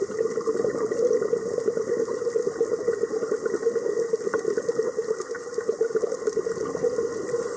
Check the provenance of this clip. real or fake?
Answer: real